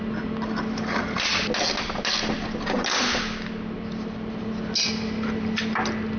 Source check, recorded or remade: recorded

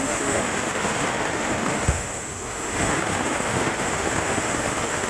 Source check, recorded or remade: remade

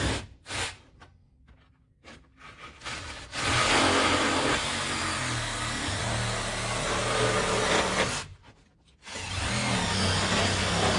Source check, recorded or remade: recorded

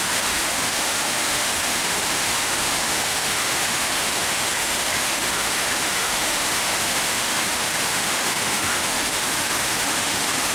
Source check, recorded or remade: remade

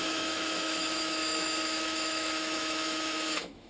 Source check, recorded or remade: remade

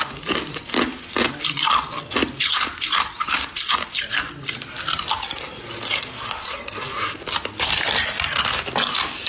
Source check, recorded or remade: recorded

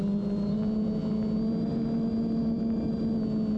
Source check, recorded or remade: recorded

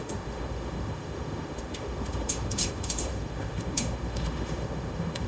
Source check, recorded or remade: remade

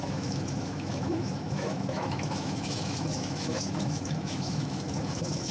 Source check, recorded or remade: remade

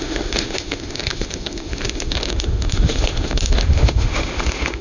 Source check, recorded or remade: remade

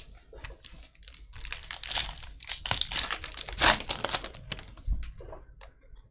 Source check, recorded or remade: recorded